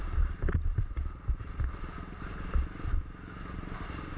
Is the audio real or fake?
real